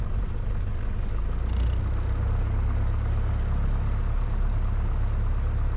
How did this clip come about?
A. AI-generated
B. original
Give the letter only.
B